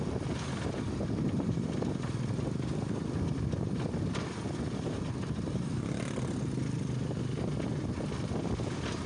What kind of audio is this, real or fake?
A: real